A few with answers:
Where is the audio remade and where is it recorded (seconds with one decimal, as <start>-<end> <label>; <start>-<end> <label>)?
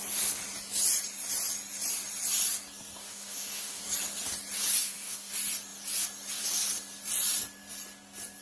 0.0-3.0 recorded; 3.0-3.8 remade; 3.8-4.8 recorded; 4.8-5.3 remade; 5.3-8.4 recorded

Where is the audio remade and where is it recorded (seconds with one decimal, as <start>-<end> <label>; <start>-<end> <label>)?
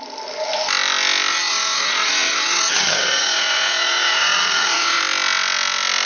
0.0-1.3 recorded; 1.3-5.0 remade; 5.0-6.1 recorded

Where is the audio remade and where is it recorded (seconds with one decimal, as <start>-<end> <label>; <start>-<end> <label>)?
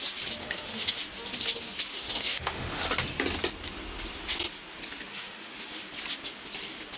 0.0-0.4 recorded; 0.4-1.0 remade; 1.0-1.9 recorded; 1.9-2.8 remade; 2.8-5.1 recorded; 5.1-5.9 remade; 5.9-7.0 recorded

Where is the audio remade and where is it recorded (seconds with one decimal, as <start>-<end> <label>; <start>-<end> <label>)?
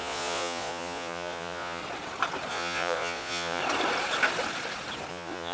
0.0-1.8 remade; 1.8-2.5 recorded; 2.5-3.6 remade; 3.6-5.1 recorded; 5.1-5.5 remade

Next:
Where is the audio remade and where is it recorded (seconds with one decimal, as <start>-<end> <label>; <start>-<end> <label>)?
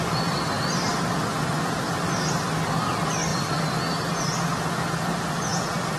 0.0-6.0 recorded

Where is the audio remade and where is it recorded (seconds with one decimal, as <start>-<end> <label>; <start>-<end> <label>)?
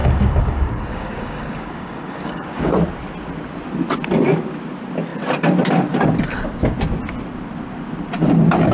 0.0-2.7 remade; 2.7-8.7 recorded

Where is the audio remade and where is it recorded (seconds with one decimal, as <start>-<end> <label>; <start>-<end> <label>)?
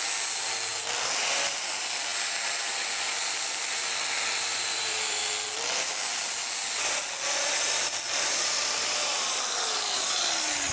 0.0-2.1 recorded; 2.1-5.2 remade; 5.2-6.1 recorded; 6.1-6.6 remade; 6.6-10.7 recorded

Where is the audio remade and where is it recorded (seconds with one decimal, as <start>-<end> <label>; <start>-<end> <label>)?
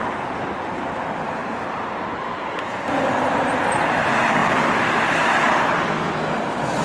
0.0-6.8 recorded